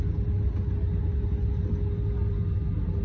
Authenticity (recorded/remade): recorded